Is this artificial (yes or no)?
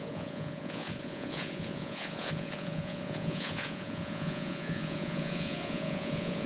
yes